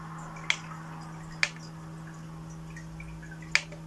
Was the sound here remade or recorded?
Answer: recorded